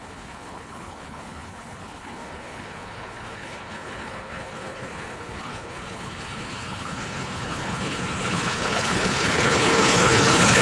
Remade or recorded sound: remade